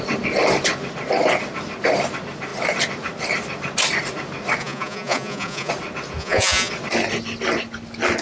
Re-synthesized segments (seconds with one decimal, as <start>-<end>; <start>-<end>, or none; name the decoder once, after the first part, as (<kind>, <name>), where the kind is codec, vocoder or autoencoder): 4.6-5.7 (vocoder, Vocos); 6.2-6.7